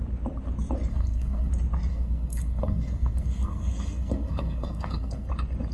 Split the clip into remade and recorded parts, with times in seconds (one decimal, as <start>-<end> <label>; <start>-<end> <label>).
0.0-0.9 recorded; 0.9-1.5 remade; 1.5-1.9 recorded; 1.9-5.3 remade; 5.3-5.7 recorded